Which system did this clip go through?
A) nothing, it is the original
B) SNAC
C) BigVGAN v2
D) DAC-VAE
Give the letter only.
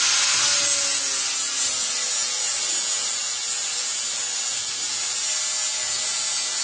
A